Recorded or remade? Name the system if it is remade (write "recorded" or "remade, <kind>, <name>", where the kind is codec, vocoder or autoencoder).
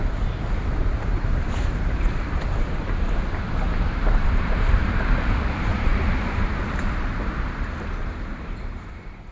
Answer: remade, vocoder, BigVGAN v2